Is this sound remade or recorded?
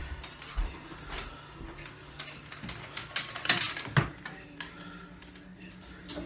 recorded